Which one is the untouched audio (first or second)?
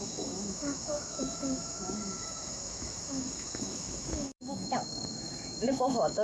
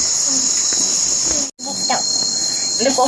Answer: second